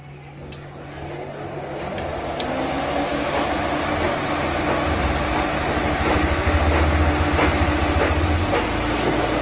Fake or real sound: real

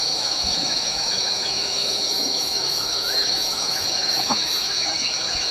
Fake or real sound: fake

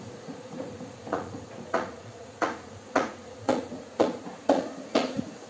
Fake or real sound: fake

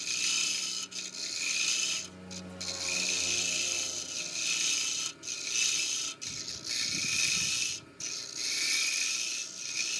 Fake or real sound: real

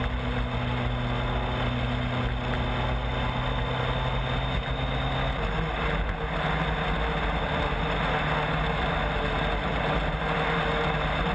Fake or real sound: real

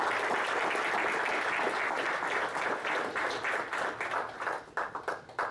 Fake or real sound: real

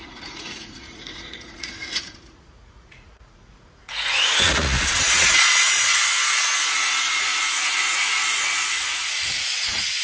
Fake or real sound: fake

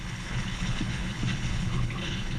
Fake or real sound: fake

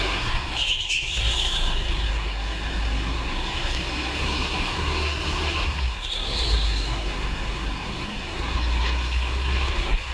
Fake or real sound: fake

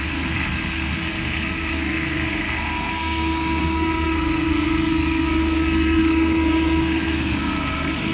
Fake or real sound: fake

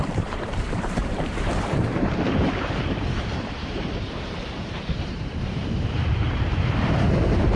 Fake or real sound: fake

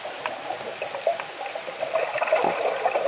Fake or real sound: real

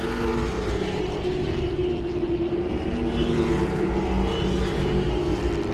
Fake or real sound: real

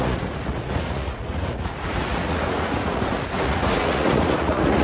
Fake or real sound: fake